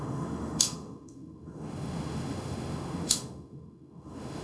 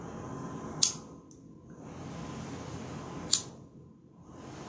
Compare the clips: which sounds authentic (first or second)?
second